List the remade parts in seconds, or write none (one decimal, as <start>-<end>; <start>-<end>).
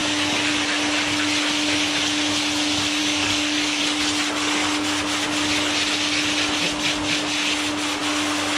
0.0-0.5; 3.0-3.8